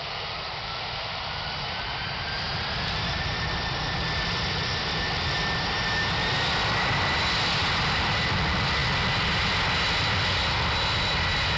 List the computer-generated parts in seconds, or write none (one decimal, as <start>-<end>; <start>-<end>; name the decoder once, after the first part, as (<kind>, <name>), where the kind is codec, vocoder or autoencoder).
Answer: none